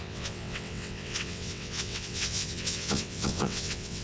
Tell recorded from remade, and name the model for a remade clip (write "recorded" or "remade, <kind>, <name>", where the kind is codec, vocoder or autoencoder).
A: remade, vocoder, WaveNeXt